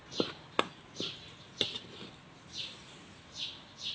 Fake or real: real